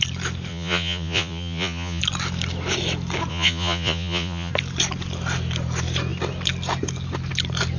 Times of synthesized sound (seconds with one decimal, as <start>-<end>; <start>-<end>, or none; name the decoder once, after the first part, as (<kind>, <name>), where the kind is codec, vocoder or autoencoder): 0.5-2.0 (vocoder, Vocos); 3.3-4.5